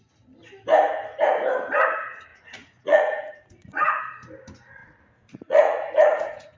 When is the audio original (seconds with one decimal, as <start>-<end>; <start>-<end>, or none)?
0.0-2.3; 4.0-4.8